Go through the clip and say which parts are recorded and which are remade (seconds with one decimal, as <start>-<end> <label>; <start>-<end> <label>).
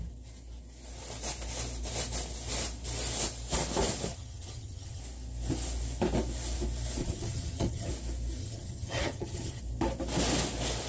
0.0-4.1 recorded; 4.1-5.0 remade; 5.0-7.0 recorded; 7.0-7.9 remade; 7.9-8.4 recorded; 8.4-9.6 remade; 9.6-10.9 recorded